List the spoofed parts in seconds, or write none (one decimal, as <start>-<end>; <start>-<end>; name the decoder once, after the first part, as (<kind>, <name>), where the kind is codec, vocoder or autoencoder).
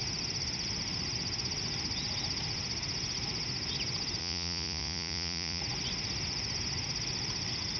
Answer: 4.2-5.6 (vocoder, Vocos)